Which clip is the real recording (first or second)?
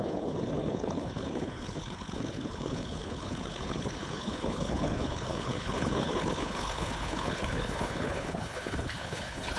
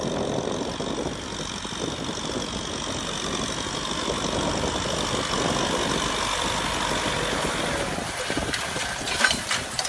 second